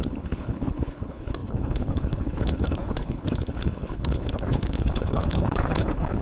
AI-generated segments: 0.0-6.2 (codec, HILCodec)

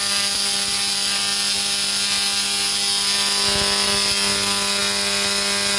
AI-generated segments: none

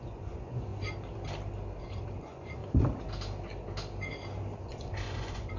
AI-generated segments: 0.0-0.7 (vocoder, Vocos); 1.8-2.6; 4.6-5.6

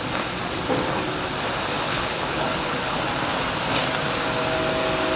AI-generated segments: 1.9-3.0 (codec, HILCodec)

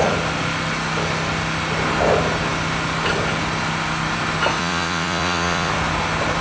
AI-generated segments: 4.6-5.7 (vocoder, Vocos)

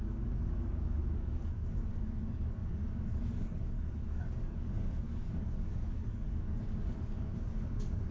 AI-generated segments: 0.0-8.1 (codec, DAC)

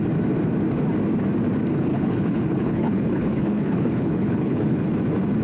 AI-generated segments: 1.9-4.9 (codec, HILCodec)